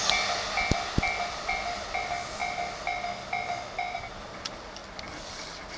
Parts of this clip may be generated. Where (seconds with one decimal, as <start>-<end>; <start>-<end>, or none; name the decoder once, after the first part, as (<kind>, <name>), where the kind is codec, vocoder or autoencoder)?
none